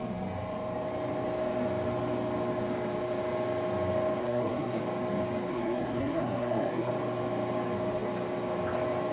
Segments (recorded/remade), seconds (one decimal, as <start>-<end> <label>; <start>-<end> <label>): 0.0-4.2 recorded; 4.2-4.8 remade; 4.8-5.5 recorded; 5.5-6.9 remade; 6.9-9.1 recorded